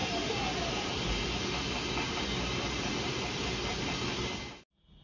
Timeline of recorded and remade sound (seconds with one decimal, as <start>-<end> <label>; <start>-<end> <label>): 0.0-5.0 recorded